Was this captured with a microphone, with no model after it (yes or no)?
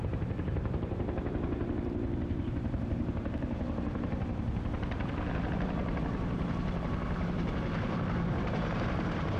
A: no